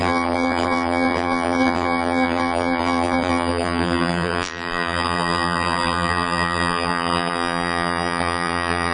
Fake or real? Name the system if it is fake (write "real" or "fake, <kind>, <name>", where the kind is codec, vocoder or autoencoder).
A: fake, vocoder, BigVGAN v2